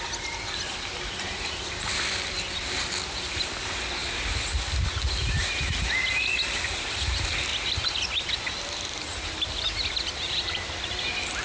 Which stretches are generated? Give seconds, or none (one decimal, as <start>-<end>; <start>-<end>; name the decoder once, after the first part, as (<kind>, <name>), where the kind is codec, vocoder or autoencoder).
7.5-10.8 (vocoder, BigVGAN v2)

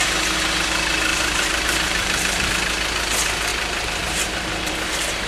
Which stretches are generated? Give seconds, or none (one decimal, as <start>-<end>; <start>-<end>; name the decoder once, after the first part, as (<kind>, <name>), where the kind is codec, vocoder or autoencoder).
1.1-2.5 (vocoder, BigVGAN v2); 3.5-5.3

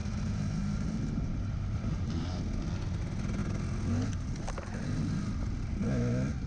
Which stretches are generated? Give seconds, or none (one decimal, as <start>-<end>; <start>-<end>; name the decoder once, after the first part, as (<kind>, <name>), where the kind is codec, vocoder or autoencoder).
0.0-2.4 (vocoder, BigVGAN v2)

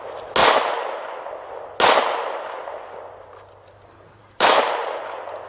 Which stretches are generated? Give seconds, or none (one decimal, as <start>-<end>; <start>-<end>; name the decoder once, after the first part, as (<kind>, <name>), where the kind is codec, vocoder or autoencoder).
4.2-5.0 (vocoder, BigVGAN v2)

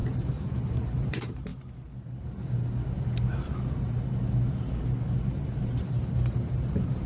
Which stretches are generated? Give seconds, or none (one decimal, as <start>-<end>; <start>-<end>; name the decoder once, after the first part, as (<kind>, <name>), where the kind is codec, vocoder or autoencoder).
0.0-1.5 (vocoder, BigVGAN v2); 5.8-7.1

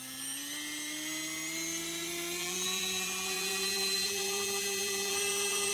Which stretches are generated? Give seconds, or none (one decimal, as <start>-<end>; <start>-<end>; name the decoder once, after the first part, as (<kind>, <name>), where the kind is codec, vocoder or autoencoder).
2.4-5.7 (vocoder, BigVGAN v2)